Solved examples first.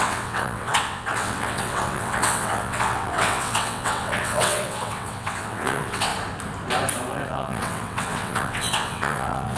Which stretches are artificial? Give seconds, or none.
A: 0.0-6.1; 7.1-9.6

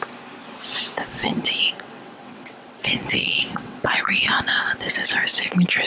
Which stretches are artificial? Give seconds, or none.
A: 0.4-3.9

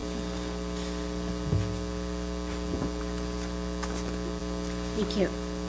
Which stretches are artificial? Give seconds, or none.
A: none